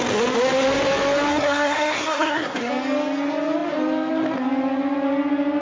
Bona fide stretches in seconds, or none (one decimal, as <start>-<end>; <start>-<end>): 0.0-1.3; 2.7-5.6